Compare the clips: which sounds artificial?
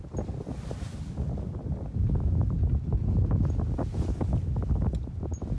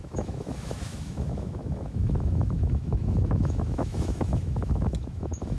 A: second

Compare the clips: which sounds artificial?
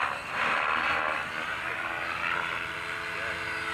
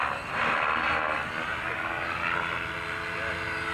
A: first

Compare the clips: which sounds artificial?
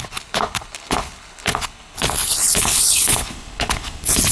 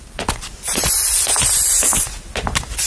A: first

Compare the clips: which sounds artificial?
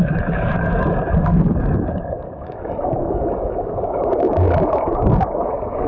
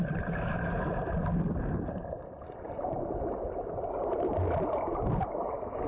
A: first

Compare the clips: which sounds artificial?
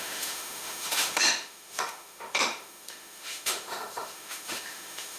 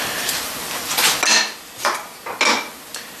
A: first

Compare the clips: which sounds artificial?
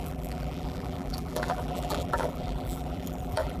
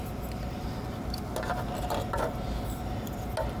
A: first